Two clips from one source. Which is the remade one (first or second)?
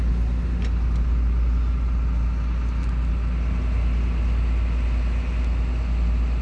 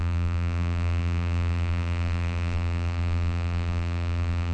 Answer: second